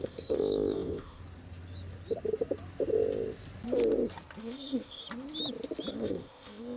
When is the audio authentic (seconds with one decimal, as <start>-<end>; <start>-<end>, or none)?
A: 1.2-4.4; 5.0-5.9